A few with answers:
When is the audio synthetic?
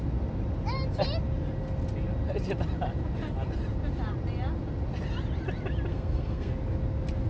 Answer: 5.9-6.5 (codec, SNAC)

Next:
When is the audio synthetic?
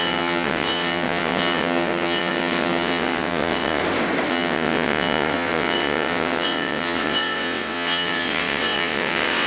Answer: 0.0-3.8 (vocoder, WaveNeXt); 4.3-9.5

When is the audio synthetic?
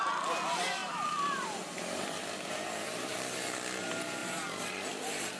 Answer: 0.8-3.1 (vocoder, BigVGAN v2); 4.2-5.4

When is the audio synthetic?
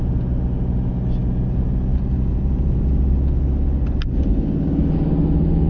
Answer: 1.9-2.8 (vocoder, BigVGAN v2)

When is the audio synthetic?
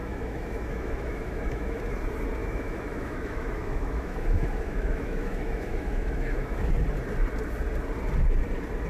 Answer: 0.0-1.8 (autoencoder, DAC-VAE); 2.4-6.7